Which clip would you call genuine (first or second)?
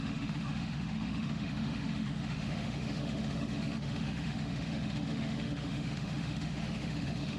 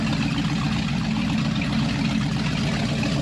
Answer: second